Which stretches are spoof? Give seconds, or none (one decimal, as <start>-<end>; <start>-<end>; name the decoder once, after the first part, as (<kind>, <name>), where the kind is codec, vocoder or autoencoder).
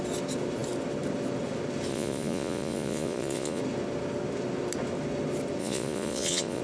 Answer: 1.9-3.6 (vocoder, Vocos); 5.6-6.6